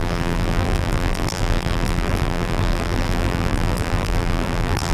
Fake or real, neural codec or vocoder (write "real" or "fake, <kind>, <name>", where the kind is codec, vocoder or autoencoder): fake, vocoder, BigVGAN v2